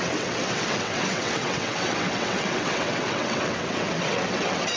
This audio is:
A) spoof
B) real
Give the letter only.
A